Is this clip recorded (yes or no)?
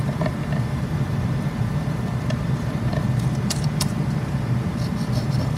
no